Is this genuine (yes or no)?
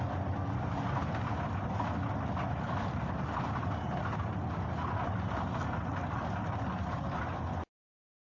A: yes